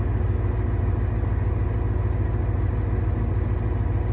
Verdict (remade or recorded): recorded